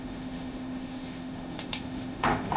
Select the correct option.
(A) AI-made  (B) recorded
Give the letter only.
A